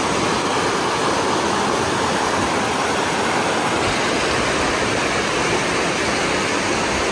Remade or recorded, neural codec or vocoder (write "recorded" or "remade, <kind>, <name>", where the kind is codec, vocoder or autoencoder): recorded